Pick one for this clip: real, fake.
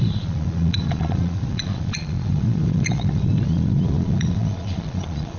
fake